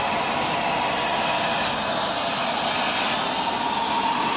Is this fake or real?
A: real